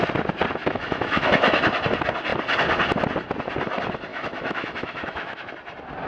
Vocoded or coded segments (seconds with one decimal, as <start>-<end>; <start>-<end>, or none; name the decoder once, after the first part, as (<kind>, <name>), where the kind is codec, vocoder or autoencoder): 0.6-1.6 (autoencoder, DAC-VAE); 4.1-5.5